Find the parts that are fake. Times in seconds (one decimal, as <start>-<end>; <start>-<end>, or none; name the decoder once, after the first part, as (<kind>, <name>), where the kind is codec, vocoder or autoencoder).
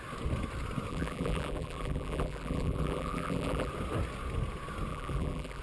0.9-3.7 (vocoder, BigVGAN v2); 4.9-5.6